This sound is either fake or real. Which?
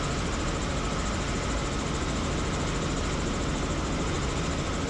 real